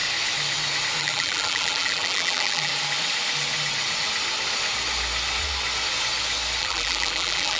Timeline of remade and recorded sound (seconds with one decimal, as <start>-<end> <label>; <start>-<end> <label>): 0.0-1.0 recorded; 1.0-2.7 remade; 2.7-6.6 recorded; 6.6-7.6 remade